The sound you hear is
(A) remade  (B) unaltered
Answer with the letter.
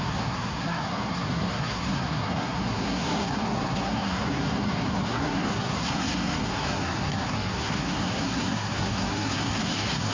A